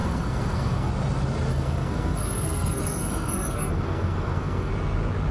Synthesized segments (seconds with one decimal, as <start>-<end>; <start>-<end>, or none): 0.0-0.9; 1.5-4.7